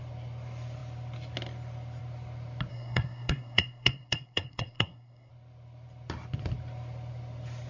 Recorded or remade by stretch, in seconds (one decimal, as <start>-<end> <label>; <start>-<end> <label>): 0.0-2.7 recorded; 2.7-5.3 remade; 5.3-7.7 recorded

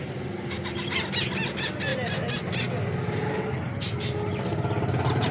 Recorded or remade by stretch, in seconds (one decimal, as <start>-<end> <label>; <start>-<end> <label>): 0.0-5.3 recorded

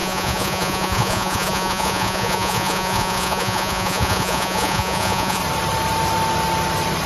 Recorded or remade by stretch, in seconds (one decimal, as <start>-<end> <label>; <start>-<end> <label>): 0.0-5.4 remade; 5.4-7.1 recorded